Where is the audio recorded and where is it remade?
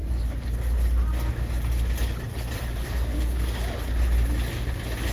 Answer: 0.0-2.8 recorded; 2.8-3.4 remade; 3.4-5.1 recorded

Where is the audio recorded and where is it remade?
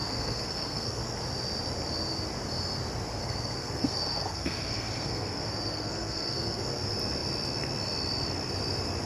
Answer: 0.0-1.0 remade; 1.0-3.2 recorded; 3.2-6.6 remade; 6.6-9.1 recorded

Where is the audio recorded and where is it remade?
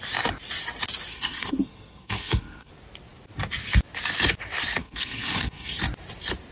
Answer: 0.0-1.1 recorded; 1.1-2.7 remade; 2.7-4.8 recorded; 4.8-5.8 remade; 5.8-6.5 recorded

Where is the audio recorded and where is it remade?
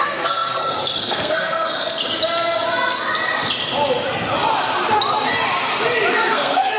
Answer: 0.0-2.0 remade; 2.0-6.1 recorded; 6.1-6.8 remade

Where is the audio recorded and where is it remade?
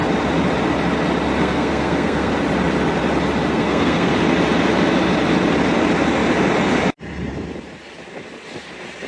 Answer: 0.0-1.4 recorded; 1.4-2.3 remade; 2.3-3.5 recorded; 3.5-4.1 remade; 4.1-9.1 recorded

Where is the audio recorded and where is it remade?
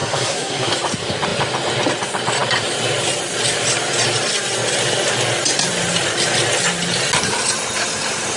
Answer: 0.0-0.7 remade; 0.7-8.4 recorded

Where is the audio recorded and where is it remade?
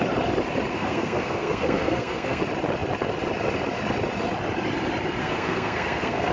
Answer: 0.0-0.7 recorded; 0.7-2.4 remade; 2.4-5.2 recorded; 5.2-6.3 remade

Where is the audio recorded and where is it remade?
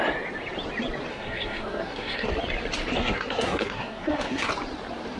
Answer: 0.0-1.1 recorded; 1.1-2.3 remade; 2.3-3.0 recorded; 3.0-4.5 remade; 4.5-5.2 recorded